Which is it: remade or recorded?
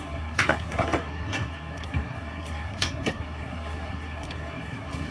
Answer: remade